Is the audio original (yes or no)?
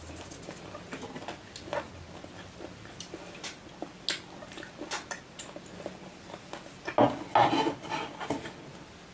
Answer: yes